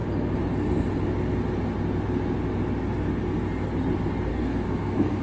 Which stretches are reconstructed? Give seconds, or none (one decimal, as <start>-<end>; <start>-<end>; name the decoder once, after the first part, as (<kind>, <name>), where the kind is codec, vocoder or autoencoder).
4.3-5.2 (codec, SNAC)